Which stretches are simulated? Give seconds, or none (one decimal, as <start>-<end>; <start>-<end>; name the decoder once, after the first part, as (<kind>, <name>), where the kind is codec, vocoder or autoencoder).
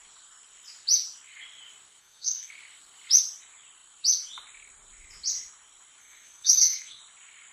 2.0-2.5 (codec, SNAC); 6.0-7.0